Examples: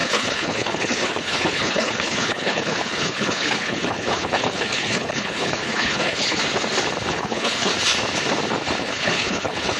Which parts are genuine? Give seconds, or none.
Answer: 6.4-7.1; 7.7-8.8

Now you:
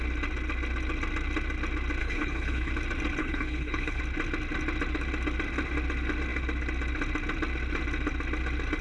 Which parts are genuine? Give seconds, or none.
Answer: 0.0-2.0; 2.7-3.2; 4.0-8.8